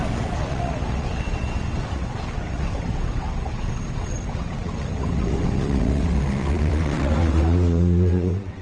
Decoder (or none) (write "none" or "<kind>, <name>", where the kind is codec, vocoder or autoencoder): vocoder, WaveNeXt